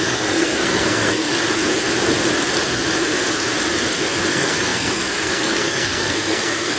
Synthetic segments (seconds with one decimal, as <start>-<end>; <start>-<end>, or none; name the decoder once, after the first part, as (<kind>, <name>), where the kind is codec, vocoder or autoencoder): 0.0-1.3 (codec, SNAC); 4.3-6.8